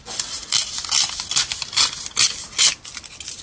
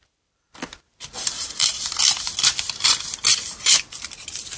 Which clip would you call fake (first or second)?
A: second